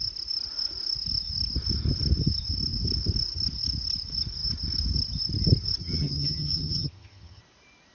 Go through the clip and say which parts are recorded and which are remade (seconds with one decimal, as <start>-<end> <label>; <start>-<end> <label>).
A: 0.0-5.8 recorded; 5.8-7.4 remade; 7.4-7.9 recorded